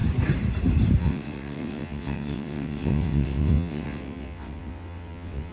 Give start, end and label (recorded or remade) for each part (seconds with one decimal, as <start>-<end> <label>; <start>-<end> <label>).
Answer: 0.0-1.0 recorded; 1.0-5.5 remade